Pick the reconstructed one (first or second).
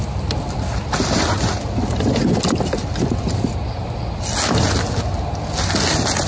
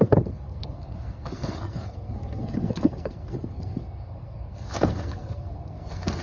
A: second